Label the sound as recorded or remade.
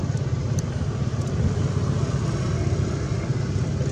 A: recorded